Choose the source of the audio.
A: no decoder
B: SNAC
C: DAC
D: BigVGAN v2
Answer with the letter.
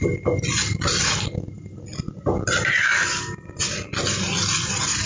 A